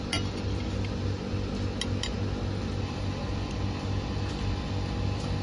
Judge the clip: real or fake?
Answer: real